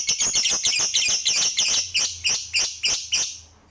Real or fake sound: real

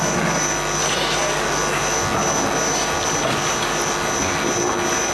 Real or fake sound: real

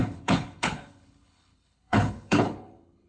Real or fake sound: fake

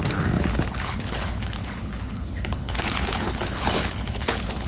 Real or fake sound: fake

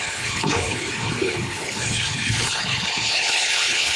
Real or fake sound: fake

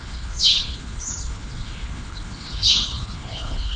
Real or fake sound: fake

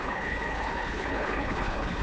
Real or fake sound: fake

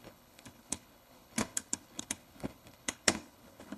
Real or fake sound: fake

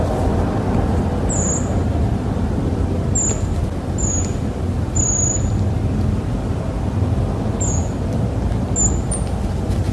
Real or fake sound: real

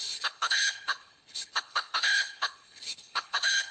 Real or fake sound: fake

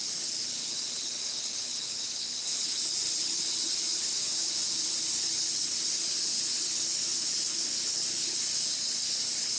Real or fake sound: fake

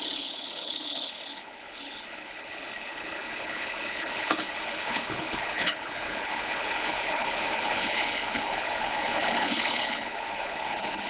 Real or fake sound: fake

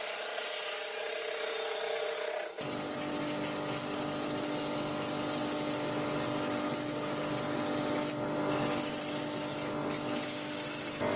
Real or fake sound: real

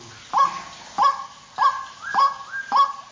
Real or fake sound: real